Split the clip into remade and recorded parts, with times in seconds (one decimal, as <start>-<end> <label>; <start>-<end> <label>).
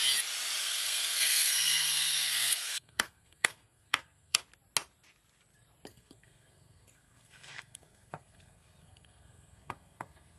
0.0-0.6 recorded; 0.6-4.4 remade; 4.4-5.9 recorded; 5.9-10.4 remade